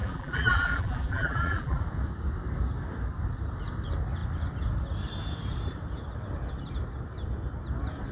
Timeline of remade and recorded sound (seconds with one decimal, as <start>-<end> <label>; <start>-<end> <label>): 0.0-1.8 remade; 1.8-8.1 recorded